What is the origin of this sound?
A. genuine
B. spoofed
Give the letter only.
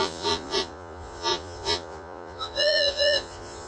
B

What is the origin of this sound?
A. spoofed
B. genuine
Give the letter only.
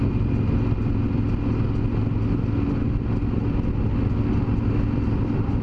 B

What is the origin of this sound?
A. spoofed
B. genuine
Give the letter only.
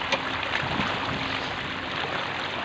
B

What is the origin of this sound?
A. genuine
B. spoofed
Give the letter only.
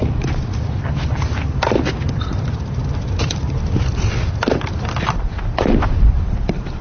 B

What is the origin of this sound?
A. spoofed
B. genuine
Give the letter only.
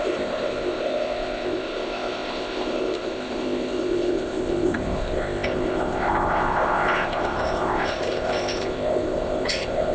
A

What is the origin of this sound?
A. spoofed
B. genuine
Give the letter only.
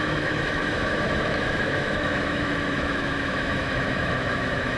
A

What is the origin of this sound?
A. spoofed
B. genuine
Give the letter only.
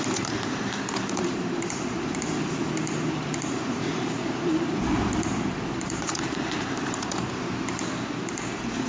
A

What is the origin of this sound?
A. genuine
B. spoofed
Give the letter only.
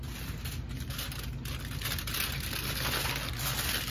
A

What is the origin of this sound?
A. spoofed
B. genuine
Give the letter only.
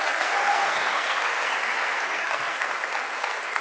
A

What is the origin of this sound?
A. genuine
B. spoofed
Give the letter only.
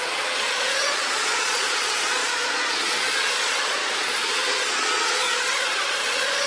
B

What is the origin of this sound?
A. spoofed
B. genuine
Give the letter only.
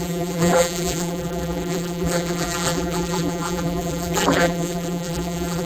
A